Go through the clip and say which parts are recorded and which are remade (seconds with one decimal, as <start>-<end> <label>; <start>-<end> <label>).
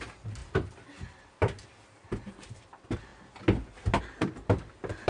0.0-3.1 remade; 3.1-4.0 recorded; 4.0-5.1 remade